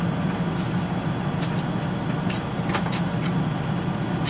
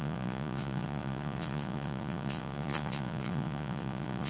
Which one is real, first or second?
first